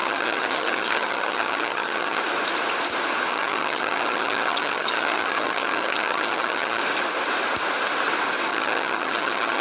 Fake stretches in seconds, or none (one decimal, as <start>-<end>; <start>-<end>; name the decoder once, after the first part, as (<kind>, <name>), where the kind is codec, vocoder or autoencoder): 0.0-2.2 (vocoder, HiFi-GAN); 3.3-6.8; 8.5-9.6